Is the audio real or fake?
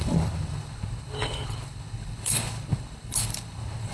fake